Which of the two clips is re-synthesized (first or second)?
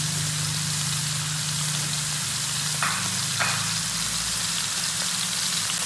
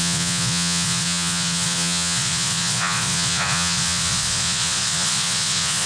second